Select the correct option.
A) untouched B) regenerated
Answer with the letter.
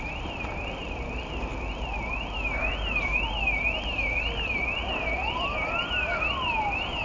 A